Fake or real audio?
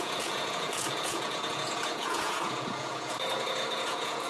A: fake